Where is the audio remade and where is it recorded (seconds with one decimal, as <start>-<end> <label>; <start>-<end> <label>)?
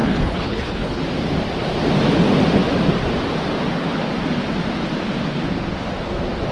0.0-1.0 remade; 1.0-6.5 recorded